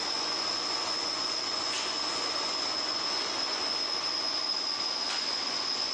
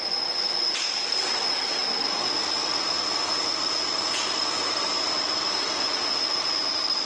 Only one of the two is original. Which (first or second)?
second